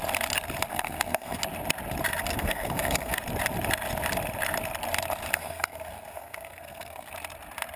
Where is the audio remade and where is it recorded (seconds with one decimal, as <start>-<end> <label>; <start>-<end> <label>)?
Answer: 0.0-0.7 recorded; 0.7-1.4 remade; 1.4-2.3 recorded; 2.3-3.2 remade; 3.2-5.3 recorded; 5.3-7.1 remade; 7.1-7.8 recorded